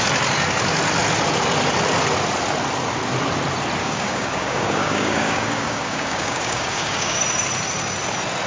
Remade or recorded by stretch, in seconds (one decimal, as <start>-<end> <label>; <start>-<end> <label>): 0.0-3.8 recorded; 3.8-7.2 remade; 7.2-8.5 recorded